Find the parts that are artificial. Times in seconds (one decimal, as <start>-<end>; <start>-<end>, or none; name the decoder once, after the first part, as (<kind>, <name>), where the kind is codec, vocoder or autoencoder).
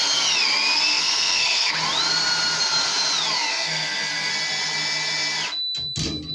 0.9-1.7 (codec, SNAC); 3.5-4.3